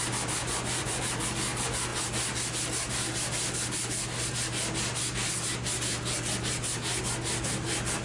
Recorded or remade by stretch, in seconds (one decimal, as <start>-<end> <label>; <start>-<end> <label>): 0.0-0.4 recorded; 0.4-1.0 remade; 1.0-8.0 recorded